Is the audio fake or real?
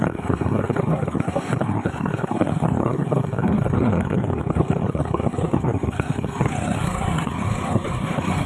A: fake